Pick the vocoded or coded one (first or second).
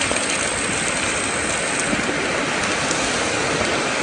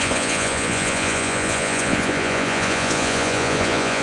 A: second